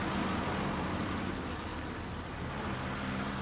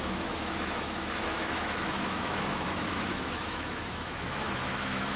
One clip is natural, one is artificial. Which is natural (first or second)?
first